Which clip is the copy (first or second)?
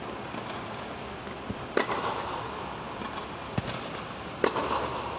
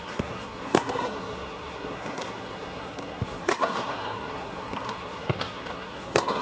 second